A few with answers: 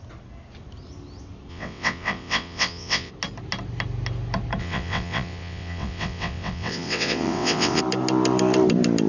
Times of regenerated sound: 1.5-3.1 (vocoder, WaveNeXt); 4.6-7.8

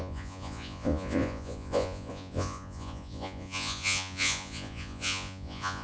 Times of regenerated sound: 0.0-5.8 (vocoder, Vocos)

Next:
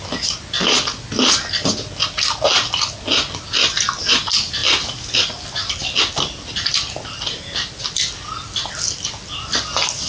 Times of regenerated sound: none